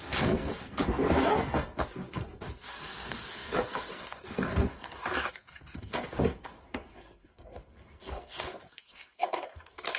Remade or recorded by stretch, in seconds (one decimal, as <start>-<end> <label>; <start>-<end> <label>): 0.0-10.0 remade